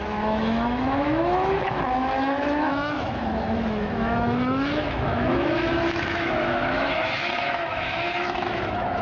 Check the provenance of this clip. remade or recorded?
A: remade